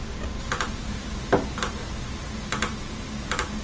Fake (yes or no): no